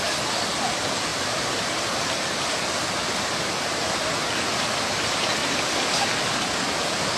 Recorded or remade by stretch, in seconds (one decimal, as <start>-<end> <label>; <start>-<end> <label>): 0.0-1.1 recorded; 1.1-1.8 remade; 1.8-3.0 recorded; 3.0-5.0 remade; 5.0-5.4 recorded; 5.4-6.0 remade; 6.0-7.2 recorded